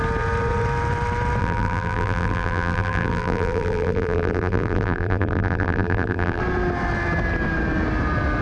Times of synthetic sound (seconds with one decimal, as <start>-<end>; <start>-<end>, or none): 1.4-6.4

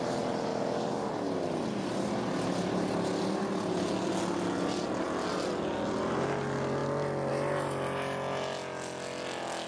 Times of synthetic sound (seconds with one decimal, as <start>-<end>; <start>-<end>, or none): 0.5-1.1